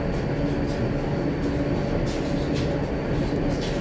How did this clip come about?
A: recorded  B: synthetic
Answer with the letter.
A